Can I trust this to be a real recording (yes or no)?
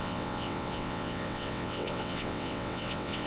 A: no